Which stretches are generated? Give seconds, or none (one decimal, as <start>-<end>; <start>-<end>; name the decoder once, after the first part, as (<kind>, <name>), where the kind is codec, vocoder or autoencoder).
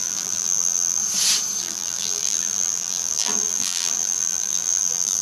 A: 0.0-1.0 (vocoder, BigVGAN v2); 1.6-5.2